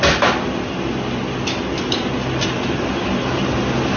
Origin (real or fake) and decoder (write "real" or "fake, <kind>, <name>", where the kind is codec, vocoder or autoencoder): real